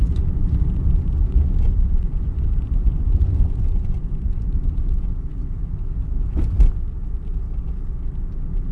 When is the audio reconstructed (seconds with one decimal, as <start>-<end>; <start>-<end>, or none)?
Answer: 0.0-5.6